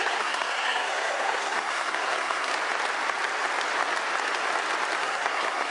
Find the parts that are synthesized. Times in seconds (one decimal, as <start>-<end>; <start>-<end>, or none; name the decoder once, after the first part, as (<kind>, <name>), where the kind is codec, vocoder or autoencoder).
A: 0.0-2.5 (codec, SNAC); 5.0-5.7